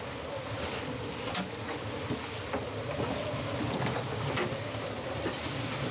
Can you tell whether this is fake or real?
real